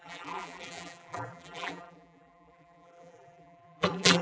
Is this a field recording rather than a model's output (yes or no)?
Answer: no